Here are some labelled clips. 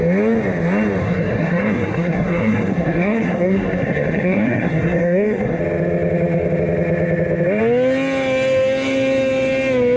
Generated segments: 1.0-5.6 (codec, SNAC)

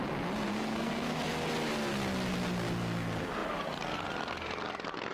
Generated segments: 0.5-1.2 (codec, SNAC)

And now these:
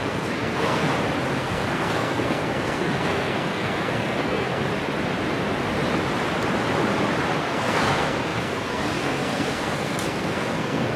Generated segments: 0.0-0.9 (codec, SNAC); 1.4-4.7; 7.4-11.0

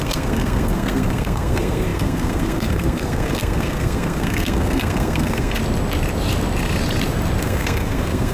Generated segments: 0.0-5.6 (codec, SNAC); 7.4-8.3

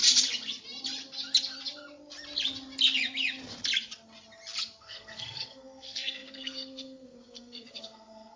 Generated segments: 4.8-8.4 (codec, SNAC)